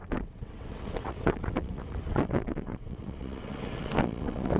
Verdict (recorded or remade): remade